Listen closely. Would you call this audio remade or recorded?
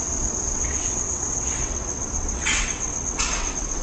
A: remade